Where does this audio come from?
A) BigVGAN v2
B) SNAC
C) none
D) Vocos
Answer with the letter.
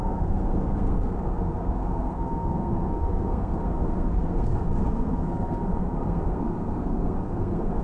B